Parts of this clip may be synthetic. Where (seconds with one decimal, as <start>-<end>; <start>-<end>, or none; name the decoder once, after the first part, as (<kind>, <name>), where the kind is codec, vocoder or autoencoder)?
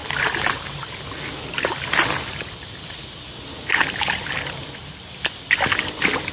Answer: none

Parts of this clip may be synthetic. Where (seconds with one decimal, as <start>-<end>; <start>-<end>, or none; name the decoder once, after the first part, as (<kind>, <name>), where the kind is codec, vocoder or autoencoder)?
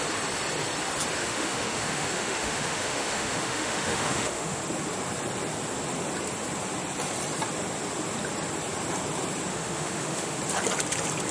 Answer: 1.2-4.6 (autoencoder, DAC-VAE); 9.5-10.4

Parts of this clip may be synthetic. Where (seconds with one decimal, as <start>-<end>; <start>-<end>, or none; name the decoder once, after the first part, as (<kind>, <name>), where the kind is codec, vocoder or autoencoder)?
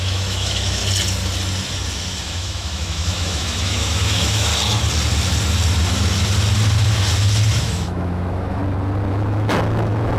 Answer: 0.0-0.8 (autoencoder, DAC-VAE); 2.2-4.5; 7.6-8.6; 9.1-10.2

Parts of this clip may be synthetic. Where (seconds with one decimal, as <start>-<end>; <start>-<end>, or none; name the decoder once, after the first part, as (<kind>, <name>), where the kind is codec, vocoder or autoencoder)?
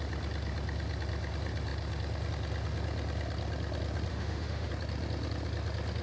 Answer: 4.1-4.7 (autoencoder, DAC-VAE)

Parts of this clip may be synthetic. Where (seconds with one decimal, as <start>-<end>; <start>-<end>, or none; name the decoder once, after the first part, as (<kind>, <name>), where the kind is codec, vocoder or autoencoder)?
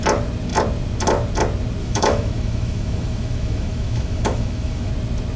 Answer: 1.8-4.9 (autoencoder, DAC-VAE)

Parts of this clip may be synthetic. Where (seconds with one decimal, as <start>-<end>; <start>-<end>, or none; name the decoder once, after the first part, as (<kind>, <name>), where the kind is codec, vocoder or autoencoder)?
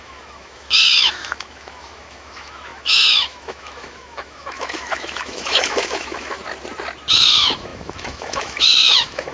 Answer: 0.0-6.4 (autoencoder, DAC-VAE); 7.1-9.3